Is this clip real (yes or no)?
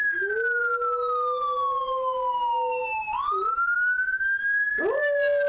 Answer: yes